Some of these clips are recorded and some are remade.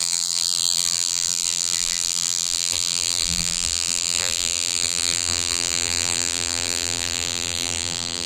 remade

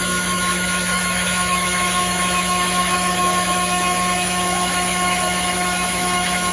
remade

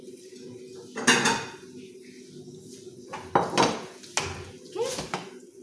recorded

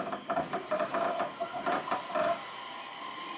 recorded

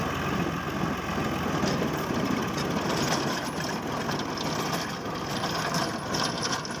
recorded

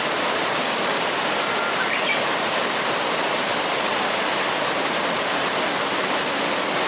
remade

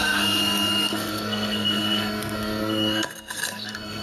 remade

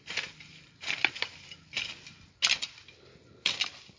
recorded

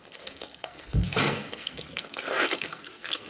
remade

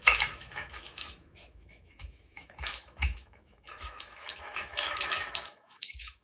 remade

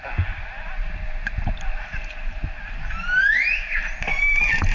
recorded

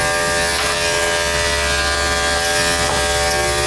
recorded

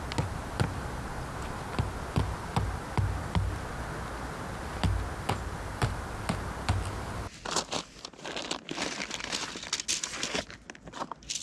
recorded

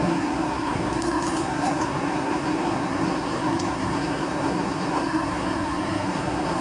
remade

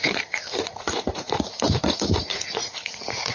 remade